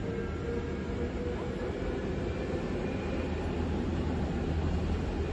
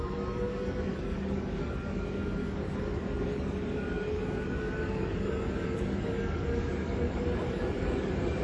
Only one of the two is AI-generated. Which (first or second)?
second